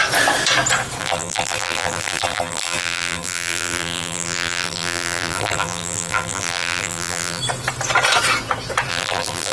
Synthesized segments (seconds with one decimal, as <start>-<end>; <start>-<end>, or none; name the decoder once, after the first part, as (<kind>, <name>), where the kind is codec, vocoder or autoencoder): 1.0-7.4 (vocoder, BigVGAN v2); 8.9-9.5